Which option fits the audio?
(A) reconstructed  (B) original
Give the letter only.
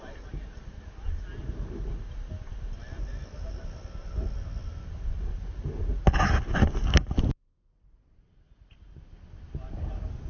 B